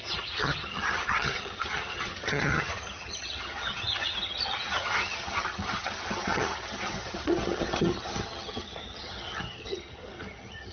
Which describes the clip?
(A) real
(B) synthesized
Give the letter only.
B